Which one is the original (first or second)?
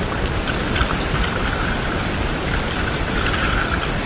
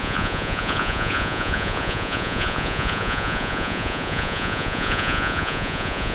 first